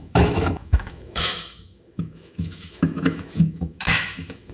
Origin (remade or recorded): remade